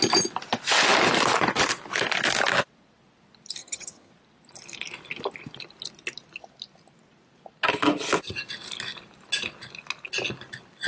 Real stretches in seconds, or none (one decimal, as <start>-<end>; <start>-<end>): 0.0-3.6; 4.1-10.9